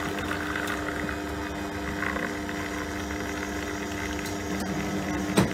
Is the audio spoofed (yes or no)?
no